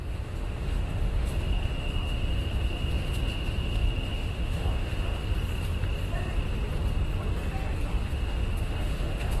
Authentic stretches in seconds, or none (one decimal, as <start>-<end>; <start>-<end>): 5.2-8.0